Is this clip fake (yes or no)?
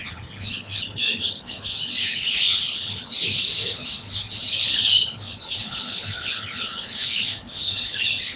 yes